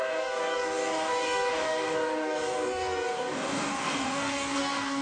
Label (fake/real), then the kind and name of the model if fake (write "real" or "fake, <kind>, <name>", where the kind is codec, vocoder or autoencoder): fake, codec, DAC